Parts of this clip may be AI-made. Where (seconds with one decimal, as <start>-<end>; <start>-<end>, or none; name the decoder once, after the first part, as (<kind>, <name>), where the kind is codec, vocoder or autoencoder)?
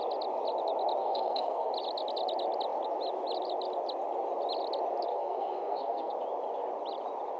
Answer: 1.0-1.7 (codec, SNAC); 5.1-6.1